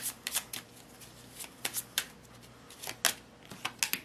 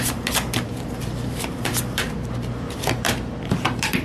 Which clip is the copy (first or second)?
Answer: second